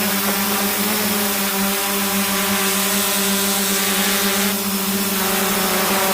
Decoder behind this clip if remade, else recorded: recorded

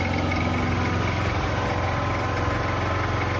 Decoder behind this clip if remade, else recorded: recorded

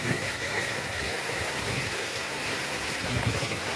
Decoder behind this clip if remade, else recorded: remade, codec, SNAC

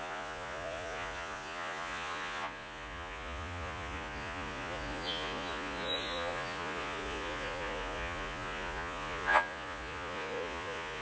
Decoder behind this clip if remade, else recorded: remade, vocoder, Vocos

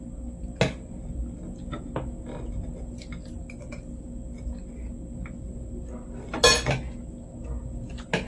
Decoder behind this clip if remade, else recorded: recorded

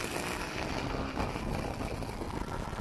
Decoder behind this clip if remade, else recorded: recorded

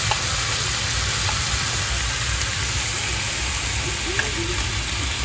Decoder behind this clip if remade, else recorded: recorded